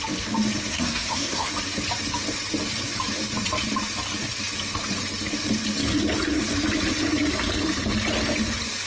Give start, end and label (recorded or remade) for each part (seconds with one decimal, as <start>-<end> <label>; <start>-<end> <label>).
0.0-0.7 recorded; 0.7-1.5 remade; 1.5-8.9 recorded